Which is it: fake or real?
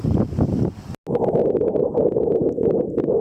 real